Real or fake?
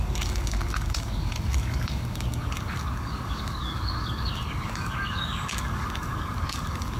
fake